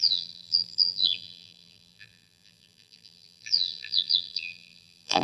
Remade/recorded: remade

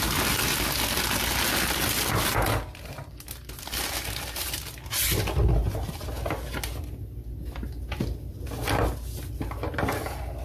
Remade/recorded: recorded